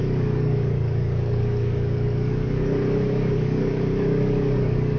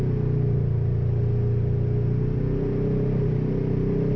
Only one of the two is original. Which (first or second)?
second